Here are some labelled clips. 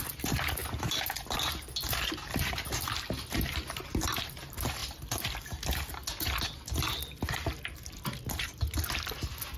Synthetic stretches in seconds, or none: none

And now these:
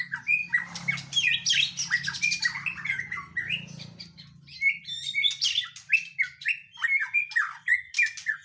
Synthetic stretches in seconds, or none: none